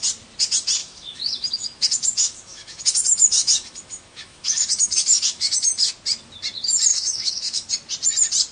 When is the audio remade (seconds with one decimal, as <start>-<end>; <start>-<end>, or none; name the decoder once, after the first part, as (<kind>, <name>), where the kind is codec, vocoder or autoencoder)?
0.8-5.9 (autoencoder, DAC-VAE); 6.9-7.7